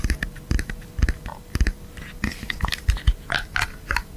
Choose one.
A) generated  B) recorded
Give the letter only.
B